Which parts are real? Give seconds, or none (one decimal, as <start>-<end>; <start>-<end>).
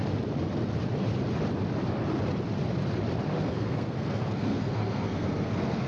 0.0-3.5